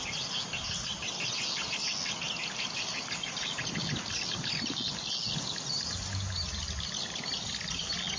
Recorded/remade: recorded